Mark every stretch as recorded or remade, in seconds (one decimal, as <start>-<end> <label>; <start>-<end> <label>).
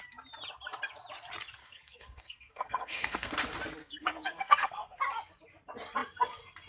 0.0-1.6 recorded; 1.6-3.3 remade; 3.3-3.8 recorded; 3.8-5.0 remade; 5.0-6.7 recorded